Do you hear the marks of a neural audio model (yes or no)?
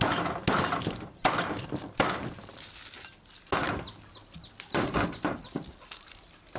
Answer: no